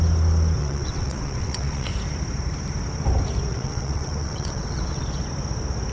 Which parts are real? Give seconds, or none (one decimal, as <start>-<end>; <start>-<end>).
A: 0.0-0.6; 1.9-3.5; 5.0-5.9